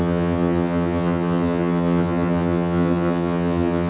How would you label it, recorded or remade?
remade